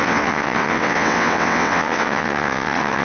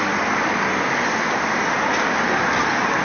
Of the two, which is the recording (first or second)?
second